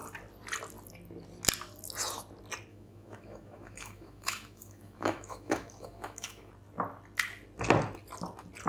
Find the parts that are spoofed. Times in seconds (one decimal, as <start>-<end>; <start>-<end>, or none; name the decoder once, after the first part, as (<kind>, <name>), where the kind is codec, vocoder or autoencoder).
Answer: 2.7-6.5 (autoencoder, DAC-VAE)

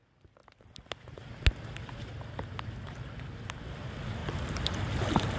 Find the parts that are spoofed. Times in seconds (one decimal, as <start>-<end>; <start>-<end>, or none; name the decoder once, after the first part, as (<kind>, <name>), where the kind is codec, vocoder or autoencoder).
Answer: none

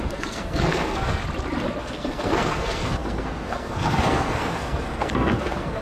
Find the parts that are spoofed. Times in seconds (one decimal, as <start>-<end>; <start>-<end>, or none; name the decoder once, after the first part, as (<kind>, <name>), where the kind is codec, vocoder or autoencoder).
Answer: 0.0-1.2 (codec, SNAC); 1.8-5.8

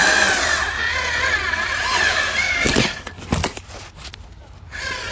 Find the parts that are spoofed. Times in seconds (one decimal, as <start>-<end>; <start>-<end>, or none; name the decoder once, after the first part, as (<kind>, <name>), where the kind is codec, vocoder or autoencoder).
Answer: none

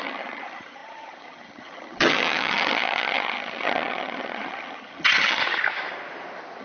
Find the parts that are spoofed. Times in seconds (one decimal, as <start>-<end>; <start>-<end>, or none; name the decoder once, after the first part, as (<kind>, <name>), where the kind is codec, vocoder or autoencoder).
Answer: 0.0-5.4 (vocoder, HiFi-GAN)

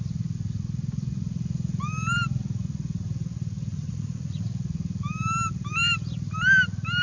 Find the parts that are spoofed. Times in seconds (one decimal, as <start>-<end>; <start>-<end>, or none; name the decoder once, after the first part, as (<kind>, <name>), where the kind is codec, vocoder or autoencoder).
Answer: 3.7-4.5 (vocoder, Vocos)